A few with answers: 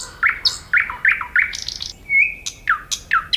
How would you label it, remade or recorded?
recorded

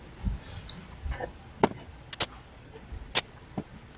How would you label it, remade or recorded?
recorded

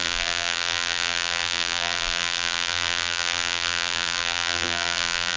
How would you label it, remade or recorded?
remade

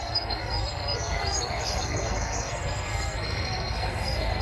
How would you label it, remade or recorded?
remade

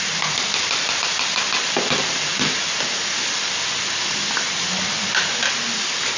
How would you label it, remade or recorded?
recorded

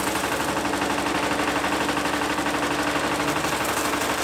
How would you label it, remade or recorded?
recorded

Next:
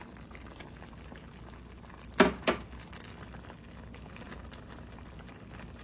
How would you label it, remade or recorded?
recorded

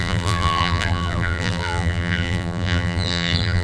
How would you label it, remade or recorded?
remade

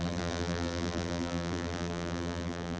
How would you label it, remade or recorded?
remade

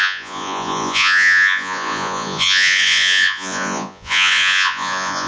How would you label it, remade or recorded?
remade